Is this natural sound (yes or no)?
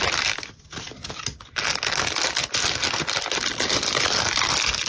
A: yes